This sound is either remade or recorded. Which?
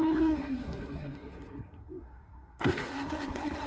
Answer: remade